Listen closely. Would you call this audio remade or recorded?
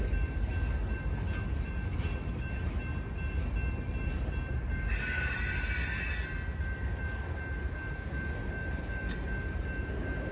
recorded